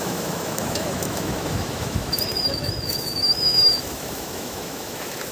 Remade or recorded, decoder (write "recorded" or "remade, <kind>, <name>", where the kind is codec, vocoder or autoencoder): remade, autoencoder, DAC-VAE